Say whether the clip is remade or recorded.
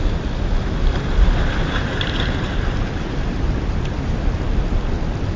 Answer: recorded